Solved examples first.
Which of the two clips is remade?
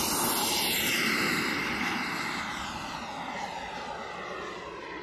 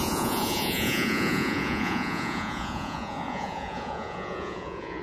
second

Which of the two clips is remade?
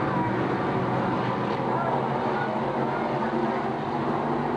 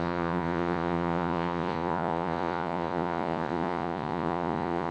second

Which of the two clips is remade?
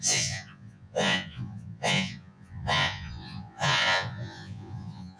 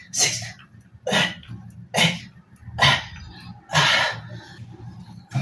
first